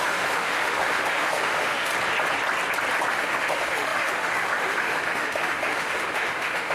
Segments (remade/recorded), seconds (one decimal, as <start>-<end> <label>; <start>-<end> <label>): 0.0-1.9 remade; 1.9-3.1 recorded; 3.1-6.7 remade